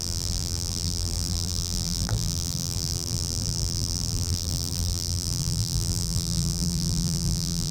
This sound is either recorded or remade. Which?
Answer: remade